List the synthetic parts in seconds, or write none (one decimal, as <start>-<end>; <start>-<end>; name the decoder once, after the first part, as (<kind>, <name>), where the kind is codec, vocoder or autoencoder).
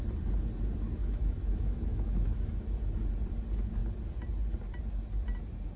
1.0-2.8 (autoencoder, DAC-VAE)